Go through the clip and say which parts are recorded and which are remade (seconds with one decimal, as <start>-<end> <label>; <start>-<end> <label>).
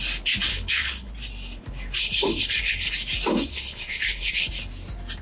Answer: 0.0-0.5 recorded; 0.5-1.1 remade; 1.1-2.0 recorded; 2.0-2.9 remade; 2.9-3.5 recorded; 3.5-4.5 remade; 4.5-5.2 recorded